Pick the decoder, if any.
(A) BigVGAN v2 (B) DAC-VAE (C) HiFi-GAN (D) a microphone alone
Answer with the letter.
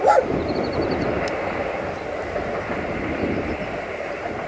A